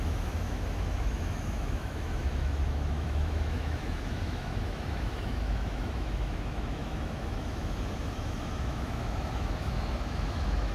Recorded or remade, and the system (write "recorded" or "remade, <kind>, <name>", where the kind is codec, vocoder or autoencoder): remade, autoencoder, DAC-VAE